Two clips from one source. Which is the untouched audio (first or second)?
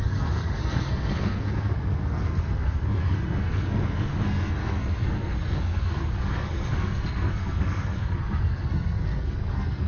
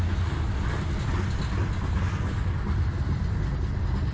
second